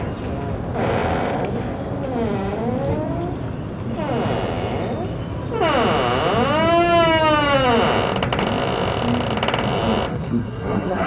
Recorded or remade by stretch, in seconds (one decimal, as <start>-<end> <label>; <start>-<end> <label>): 0.0-10.1 recorded; 10.1-11.1 remade